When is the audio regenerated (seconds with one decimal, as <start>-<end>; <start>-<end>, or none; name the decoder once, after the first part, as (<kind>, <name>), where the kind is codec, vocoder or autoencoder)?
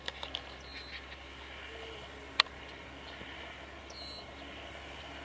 none